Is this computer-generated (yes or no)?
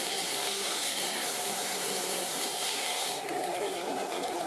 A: yes